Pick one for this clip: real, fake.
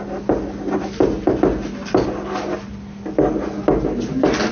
real